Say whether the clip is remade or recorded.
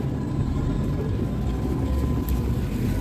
recorded